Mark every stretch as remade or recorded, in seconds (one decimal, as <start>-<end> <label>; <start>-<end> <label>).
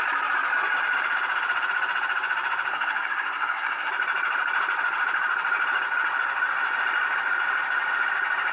0.0-2.7 recorded; 2.7-3.9 remade; 3.9-8.5 recorded